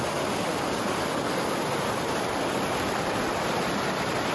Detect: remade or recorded recorded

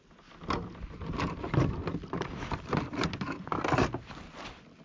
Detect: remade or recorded recorded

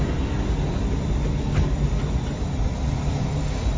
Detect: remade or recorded recorded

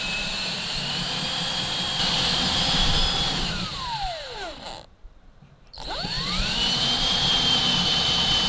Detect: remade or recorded remade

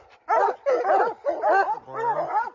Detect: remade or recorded recorded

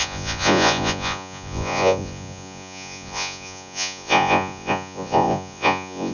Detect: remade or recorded remade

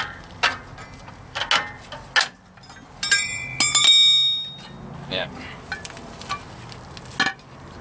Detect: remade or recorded recorded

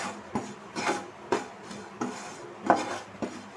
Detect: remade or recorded recorded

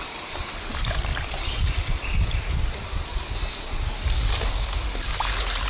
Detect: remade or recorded recorded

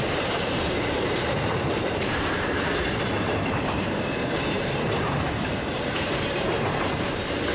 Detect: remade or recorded remade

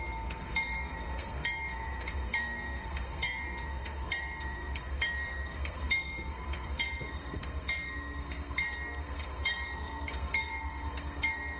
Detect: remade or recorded remade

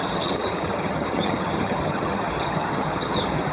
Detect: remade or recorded remade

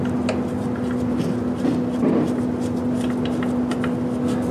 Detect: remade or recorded recorded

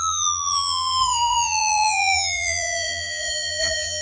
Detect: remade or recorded remade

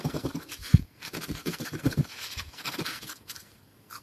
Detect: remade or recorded remade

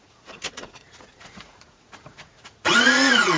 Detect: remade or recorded remade